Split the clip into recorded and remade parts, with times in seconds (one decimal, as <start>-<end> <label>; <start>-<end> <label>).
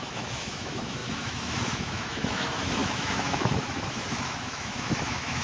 0.0-5.4 remade